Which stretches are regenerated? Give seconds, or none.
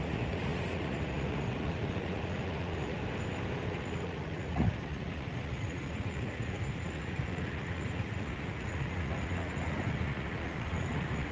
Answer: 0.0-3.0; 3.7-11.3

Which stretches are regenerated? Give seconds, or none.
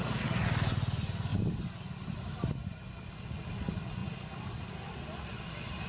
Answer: none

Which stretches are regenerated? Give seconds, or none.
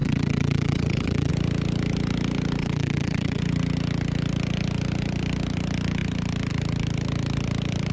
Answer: 0.0-1.3; 2.6-3.4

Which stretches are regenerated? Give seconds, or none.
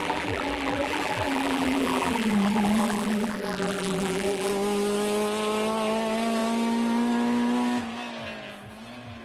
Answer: 0.0-4.5